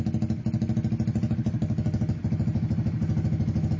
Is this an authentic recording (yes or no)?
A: yes